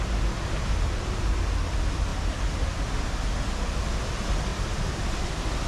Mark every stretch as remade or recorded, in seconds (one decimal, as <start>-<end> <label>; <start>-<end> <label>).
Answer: 0.0-5.7 recorded